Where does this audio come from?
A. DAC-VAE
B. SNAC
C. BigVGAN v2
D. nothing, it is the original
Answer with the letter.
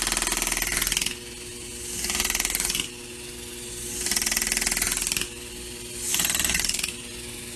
D